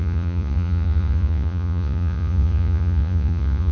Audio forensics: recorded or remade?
remade